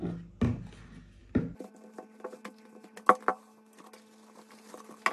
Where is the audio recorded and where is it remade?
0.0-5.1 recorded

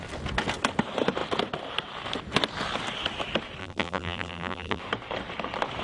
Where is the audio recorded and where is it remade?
0.0-3.6 recorded; 3.6-4.8 remade; 4.8-5.8 recorded

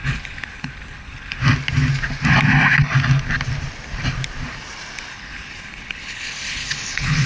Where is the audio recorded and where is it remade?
0.0-1.4 remade; 1.4-5.1 recorded; 5.1-7.3 remade

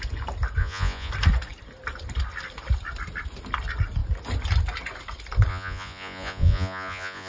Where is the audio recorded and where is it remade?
0.0-0.6 recorded; 0.6-1.1 remade; 1.1-5.5 recorded; 5.5-7.3 remade

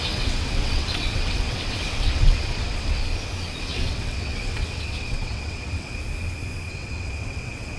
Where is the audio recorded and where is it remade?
0.0-3.0 remade; 3.0-3.6 recorded; 3.6-6.0 remade; 6.0-6.7 recorded; 6.7-7.8 remade

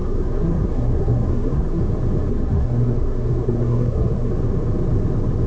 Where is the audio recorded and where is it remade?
0.0-1.8 remade; 1.8-2.3 recorded; 2.3-4.3 remade; 4.3-5.5 recorded